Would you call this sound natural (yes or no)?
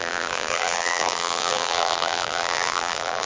no